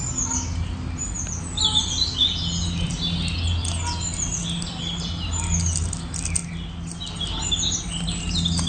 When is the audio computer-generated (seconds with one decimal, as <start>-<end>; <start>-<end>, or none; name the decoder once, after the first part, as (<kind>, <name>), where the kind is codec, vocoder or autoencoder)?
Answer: none